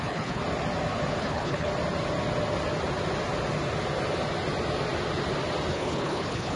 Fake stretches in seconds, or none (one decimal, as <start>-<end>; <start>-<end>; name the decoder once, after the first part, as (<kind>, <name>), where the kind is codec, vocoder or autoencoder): 0.0-0.4 (codec, HILCodec); 1.2-1.7; 5.7-6.6